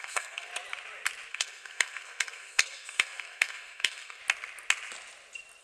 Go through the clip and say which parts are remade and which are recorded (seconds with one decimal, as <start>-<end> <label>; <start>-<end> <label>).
0.0-0.5 remade; 0.5-1.3 recorded; 1.3-4.2 remade; 4.2-5.6 recorded